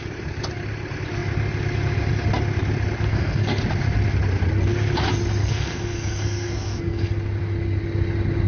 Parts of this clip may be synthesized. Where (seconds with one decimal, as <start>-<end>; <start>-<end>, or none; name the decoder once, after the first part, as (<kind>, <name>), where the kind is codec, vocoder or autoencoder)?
3.1-3.6 (codec, SNAC); 5.4-7.1

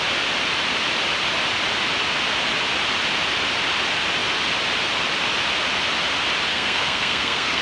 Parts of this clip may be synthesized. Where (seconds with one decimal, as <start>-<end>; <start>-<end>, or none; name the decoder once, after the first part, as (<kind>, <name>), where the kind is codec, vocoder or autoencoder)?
6.5-7.6 (codec, SNAC)

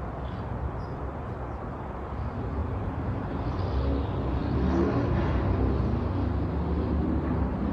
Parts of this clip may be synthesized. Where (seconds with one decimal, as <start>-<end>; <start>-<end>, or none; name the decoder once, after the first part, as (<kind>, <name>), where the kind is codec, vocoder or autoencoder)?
2.6-3.6 (vocoder, BigVGAN v2)

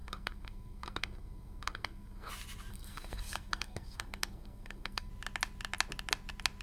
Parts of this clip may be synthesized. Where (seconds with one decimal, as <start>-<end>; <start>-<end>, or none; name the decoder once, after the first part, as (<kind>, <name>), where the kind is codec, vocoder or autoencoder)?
0.0-2.3 (codec, SNAC); 2.7-5.1

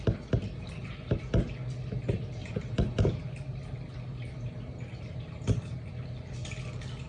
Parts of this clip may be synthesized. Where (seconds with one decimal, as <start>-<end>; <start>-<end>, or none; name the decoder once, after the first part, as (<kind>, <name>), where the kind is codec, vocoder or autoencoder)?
0.4-1.2 (vocoder, BigVGAN v2); 2.4-3.0; 4.1-4.7